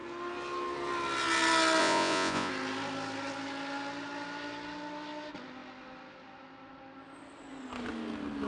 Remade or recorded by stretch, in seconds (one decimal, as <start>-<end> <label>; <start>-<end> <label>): 0.0-1.8 recorded; 1.8-2.5 remade; 2.5-8.5 recorded